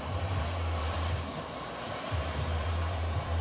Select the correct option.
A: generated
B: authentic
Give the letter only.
A